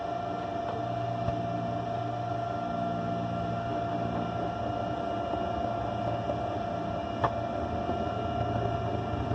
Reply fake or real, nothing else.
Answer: real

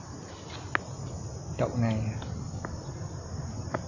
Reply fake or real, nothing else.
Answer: real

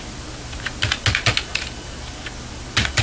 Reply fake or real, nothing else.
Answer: real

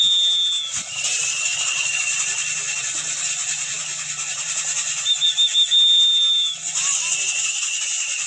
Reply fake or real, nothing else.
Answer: real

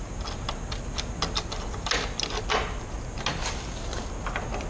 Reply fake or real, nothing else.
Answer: real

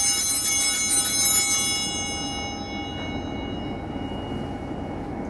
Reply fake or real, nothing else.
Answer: real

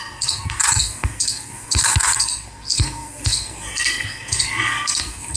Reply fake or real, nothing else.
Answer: fake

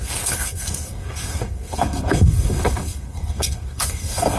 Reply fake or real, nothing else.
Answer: fake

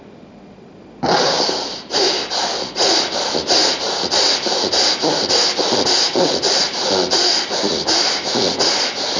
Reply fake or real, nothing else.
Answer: real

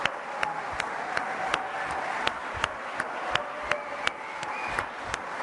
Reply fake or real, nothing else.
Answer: real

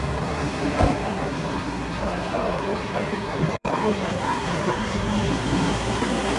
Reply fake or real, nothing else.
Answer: fake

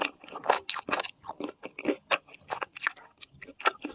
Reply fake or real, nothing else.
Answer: real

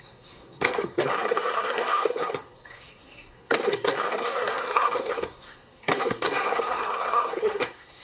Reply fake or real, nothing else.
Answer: fake